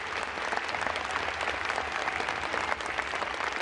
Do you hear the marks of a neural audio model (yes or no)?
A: no